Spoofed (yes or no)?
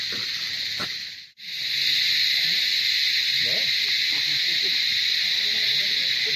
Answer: no